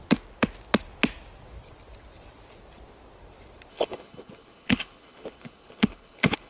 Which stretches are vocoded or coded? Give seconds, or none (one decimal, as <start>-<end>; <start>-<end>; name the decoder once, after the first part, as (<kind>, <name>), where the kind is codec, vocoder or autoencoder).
3.7-6.5 (codec, HILCodec)